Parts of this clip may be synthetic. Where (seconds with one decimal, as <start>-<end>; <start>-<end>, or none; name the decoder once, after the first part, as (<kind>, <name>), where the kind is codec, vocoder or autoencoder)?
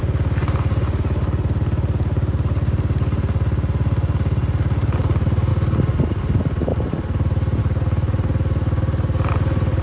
none